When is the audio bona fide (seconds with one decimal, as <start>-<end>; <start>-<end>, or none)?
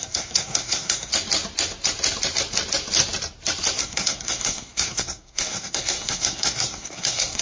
1.1-3.8